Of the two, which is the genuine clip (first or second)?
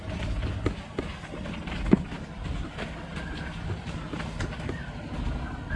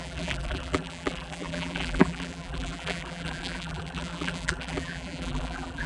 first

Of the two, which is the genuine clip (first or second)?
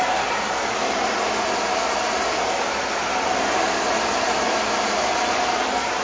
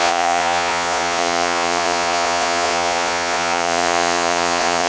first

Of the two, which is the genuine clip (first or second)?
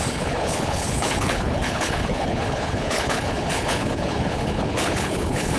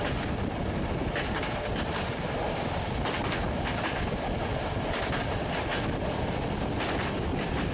second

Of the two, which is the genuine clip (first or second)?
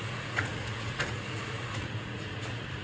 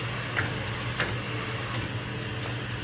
second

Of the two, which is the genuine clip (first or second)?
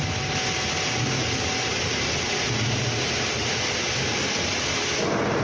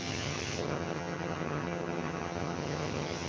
first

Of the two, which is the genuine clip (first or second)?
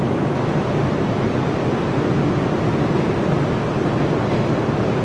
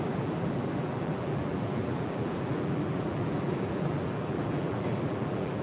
first